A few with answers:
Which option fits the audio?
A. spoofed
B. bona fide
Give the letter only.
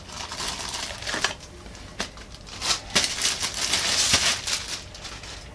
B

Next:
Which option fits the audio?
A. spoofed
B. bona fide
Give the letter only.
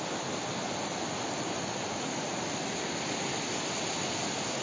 B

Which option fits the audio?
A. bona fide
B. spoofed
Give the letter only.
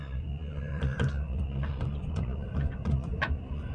B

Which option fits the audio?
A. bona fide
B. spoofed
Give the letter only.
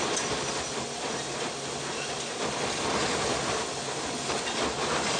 A